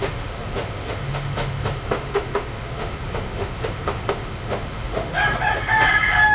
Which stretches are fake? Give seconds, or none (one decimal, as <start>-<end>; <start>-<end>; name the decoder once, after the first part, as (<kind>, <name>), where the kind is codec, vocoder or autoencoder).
0.0-5.1 (autoencoder, DAC-VAE)